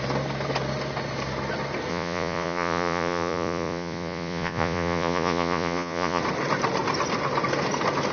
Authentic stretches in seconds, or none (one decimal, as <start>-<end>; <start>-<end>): 0.0-1.9; 6.2-8.1